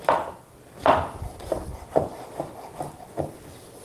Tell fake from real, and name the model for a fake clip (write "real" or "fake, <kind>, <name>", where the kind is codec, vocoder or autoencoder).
real